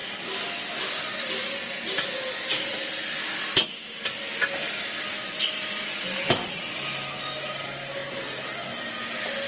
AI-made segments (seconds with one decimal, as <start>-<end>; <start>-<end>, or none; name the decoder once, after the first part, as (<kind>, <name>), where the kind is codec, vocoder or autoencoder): none